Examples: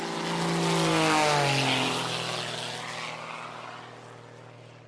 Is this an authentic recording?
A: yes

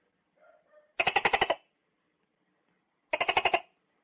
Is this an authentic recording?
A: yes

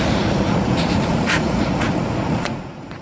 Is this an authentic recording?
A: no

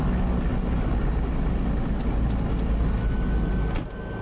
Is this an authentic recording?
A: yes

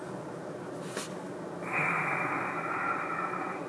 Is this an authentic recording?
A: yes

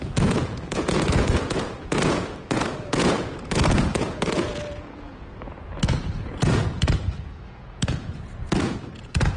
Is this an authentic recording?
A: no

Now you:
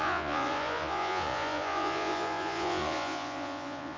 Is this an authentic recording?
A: no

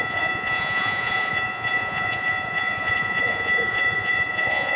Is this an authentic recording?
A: no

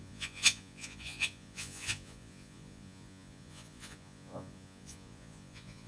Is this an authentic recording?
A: no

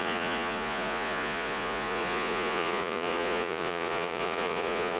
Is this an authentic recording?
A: no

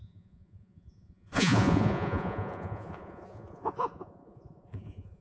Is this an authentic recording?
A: no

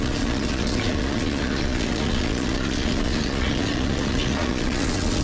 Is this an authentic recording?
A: no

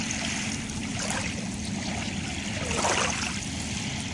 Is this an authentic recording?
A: yes